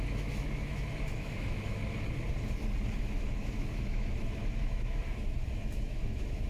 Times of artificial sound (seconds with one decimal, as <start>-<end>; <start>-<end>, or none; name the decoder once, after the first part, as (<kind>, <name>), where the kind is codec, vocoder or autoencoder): 0.0-1.8 (autoencoder, DAC-VAE); 3.0-6.5